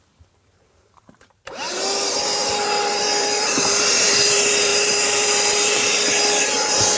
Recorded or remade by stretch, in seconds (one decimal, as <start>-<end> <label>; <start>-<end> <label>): 0.0-7.0 remade